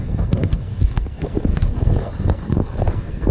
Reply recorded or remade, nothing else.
remade